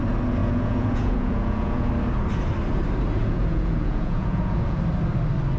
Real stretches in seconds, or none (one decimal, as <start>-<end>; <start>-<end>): 0.0-0.4; 1.9-3.2; 4.8-5.6